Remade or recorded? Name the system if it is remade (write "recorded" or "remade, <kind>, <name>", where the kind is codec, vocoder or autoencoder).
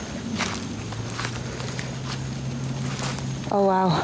recorded